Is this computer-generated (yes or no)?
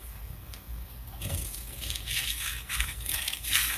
yes